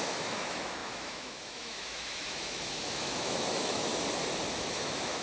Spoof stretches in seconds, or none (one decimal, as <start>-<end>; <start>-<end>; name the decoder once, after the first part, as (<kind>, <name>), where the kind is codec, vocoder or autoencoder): 0.0-3.9 (autoencoder, DAC-VAE); 4.5-5.2